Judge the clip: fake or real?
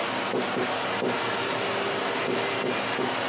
real